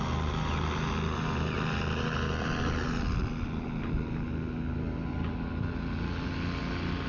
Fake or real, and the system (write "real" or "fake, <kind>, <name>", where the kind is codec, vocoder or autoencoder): real